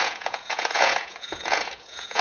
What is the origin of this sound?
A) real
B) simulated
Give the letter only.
B